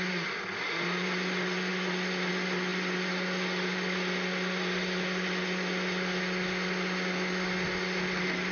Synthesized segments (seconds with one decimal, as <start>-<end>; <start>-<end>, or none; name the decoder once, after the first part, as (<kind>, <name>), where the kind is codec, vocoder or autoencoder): none